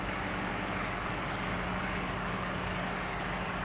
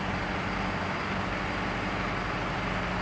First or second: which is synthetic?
first